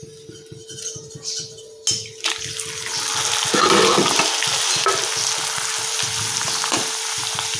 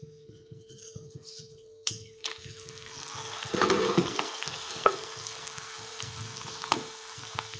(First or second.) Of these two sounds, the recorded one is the first